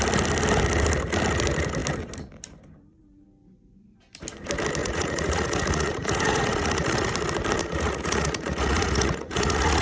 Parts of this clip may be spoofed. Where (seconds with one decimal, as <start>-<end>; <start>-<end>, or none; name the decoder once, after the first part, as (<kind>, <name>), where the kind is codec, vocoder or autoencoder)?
4.8-7.1 (vocoder, Vocos); 7.6-9.8